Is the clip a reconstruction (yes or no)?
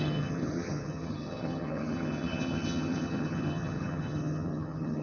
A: yes